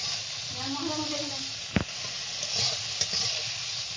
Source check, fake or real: real